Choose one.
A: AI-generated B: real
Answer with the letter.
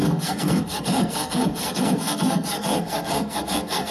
A